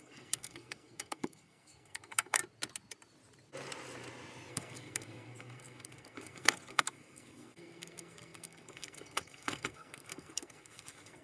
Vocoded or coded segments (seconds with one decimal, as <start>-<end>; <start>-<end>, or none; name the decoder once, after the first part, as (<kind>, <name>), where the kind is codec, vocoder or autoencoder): 0.0-2.4 (codec, SNAC); 4.5-11.2

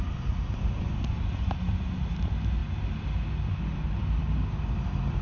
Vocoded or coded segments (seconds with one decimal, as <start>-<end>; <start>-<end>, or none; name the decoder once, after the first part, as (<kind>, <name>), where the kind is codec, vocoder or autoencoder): none

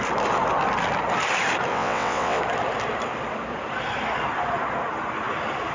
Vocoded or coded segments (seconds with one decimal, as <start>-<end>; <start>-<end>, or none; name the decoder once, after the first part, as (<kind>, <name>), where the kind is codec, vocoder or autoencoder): 1.7-2.4 (vocoder, WaveNeXt)

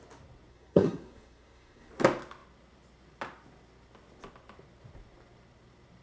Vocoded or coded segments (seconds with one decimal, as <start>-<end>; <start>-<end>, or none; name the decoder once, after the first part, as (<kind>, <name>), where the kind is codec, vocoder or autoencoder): 0.5-1.9 (codec, SNAC)

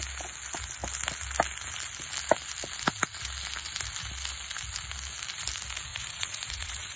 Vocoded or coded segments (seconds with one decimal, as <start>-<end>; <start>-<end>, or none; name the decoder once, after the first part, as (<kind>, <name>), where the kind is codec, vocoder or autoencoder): 5.9-7.0 (vocoder, Vocos)